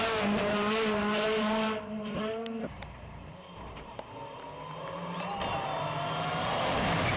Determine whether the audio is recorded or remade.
remade